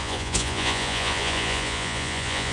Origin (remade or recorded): remade